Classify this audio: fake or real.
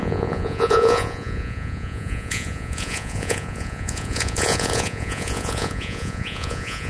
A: fake